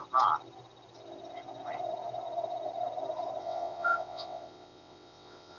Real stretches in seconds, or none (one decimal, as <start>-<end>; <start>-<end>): 0.0-3.4